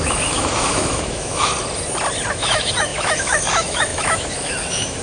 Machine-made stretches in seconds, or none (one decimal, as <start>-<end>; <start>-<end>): 0.0-1.5; 2.3-5.0